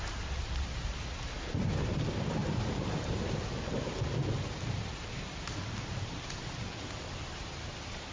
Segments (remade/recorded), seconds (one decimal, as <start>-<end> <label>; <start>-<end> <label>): 0.0-2.4 recorded; 2.4-4.3 remade; 4.3-8.1 recorded